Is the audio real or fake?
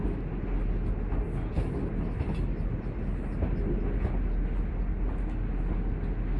real